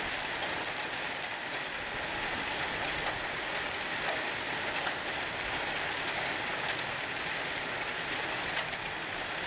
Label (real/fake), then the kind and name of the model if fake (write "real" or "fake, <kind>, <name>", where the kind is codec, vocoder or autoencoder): real